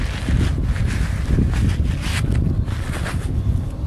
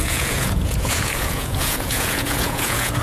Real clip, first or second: first